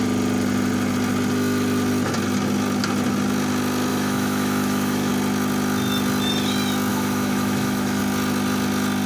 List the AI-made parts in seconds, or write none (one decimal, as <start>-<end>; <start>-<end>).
3.9-5.1; 6.9-8.0